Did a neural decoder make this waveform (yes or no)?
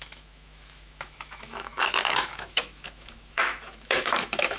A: yes